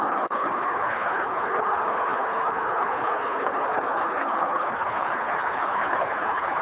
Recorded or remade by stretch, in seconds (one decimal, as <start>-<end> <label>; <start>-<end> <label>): 0.0-6.6 remade